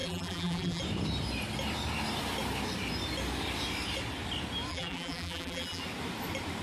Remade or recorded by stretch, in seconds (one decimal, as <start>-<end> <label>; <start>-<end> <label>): 0.0-0.8 remade; 0.8-4.7 recorded; 4.7-5.8 remade; 5.8-6.6 recorded